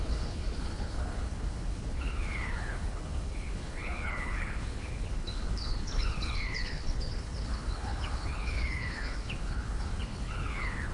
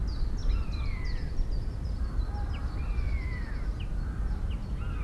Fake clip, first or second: first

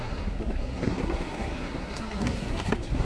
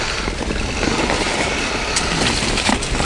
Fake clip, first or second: first